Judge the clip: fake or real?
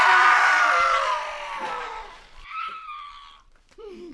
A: fake